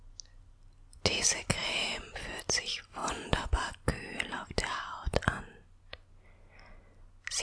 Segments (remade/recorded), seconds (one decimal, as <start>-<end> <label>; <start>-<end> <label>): 0.0-7.4 recorded